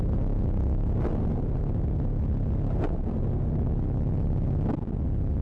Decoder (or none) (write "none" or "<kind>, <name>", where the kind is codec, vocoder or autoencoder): none